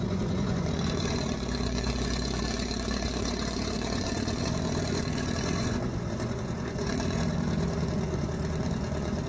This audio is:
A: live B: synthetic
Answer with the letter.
B